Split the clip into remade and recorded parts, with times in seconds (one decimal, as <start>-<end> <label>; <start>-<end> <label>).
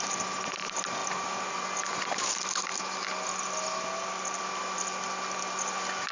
0.0-6.1 recorded